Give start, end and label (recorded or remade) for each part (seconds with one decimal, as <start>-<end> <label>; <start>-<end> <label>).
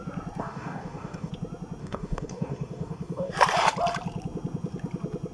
0.0-0.4 recorded; 0.4-1.3 remade; 1.3-1.8 recorded; 1.8-3.3 remade; 3.3-5.3 recorded